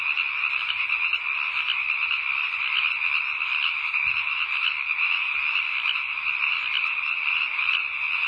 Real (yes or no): yes